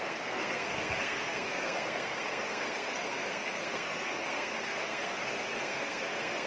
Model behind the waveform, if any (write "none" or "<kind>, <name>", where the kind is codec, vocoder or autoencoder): codec, SNAC